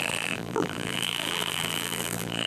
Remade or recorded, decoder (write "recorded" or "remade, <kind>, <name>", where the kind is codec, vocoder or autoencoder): remade, vocoder, BigVGAN v2